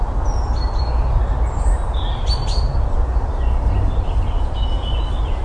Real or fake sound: real